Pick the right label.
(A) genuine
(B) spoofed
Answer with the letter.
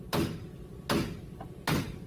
A